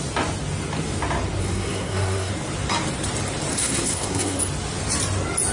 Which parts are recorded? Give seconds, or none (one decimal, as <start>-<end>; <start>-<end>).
0.0-1.4; 2.3-3.5; 4.4-5.5